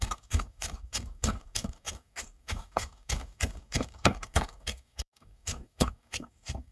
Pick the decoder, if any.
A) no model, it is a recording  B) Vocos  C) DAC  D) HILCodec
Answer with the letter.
C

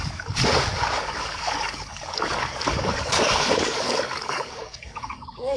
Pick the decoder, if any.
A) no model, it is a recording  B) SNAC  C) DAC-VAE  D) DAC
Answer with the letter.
D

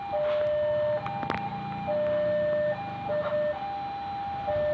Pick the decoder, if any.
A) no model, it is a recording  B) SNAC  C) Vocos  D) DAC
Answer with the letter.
A